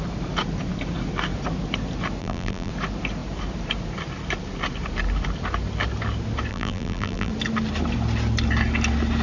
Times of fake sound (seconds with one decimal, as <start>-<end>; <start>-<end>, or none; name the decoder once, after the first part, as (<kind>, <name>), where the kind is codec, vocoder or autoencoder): 2.2-2.7 (vocoder, BigVGAN v2); 6.5-7.3